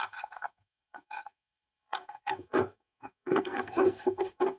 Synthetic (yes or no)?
yes